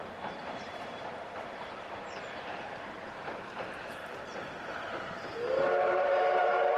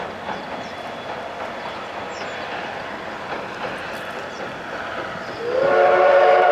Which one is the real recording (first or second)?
second